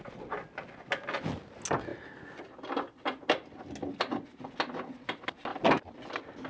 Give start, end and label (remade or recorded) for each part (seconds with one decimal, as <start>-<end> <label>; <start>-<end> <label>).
0.0-6.5 recorded